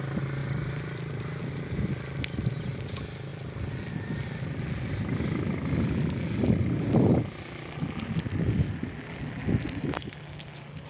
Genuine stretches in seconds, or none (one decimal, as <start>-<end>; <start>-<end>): 0.0-0.4; 1.4-10.9